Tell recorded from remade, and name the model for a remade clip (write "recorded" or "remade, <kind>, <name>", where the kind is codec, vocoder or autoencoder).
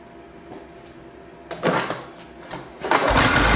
recorded